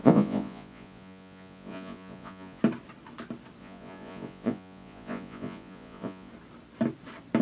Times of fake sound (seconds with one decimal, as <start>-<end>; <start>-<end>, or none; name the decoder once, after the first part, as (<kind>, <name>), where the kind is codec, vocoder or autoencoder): 0.0-2.6 (vocoder, Vocos); 3.6-6.3